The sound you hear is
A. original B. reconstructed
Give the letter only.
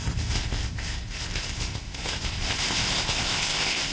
B